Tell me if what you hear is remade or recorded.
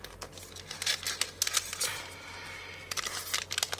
recorded